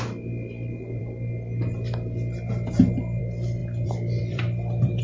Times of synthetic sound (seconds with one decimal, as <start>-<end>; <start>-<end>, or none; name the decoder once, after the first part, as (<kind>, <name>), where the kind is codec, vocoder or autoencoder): 3.6-5.0 (vocoder, BigVGAN v2)